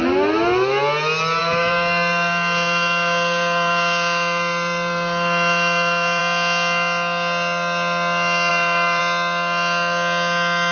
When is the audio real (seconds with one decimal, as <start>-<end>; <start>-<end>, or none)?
0.0-1.4; 6.2-8.5; 9.0-10.7